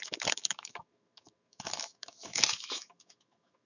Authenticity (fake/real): fake